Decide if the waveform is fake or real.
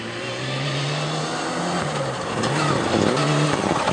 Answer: real